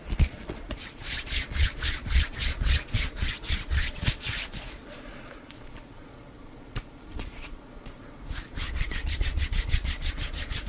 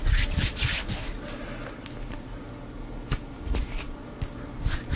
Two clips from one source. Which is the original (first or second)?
second